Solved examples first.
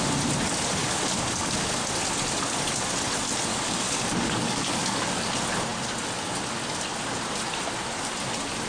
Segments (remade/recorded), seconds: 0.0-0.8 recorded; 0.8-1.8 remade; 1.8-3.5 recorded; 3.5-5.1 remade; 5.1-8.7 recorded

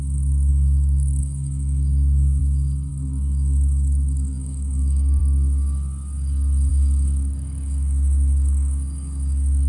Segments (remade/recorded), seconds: 0.0-2.4 remade; 2.4-2.9 recorded; 2.9-5.2 remade; 5.2-6.7 recorded; 6.7-9.7 remade

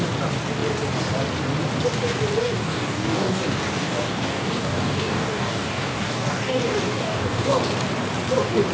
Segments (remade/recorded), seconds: 0.0-2.4 recorded; 2.4-7.6 remade; 7.6-8.7 recorded

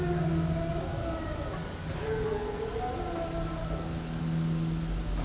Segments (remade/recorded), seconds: 0.0-1.6 recorded; 1.6-2.4 remade; 2.4-3.6 recorded; 3.6-4.2 remade; 4.2-5.2 recorded